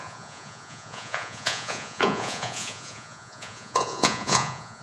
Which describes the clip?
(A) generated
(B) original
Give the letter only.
A